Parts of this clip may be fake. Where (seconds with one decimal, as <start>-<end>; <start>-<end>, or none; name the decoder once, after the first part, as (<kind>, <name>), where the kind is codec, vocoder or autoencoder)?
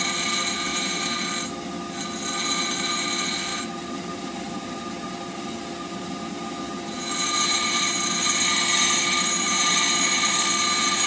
0.7-1.3 (vocoder, BigVGAN v2); 3.5-7.0